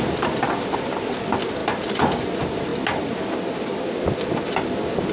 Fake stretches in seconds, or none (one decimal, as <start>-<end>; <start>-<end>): none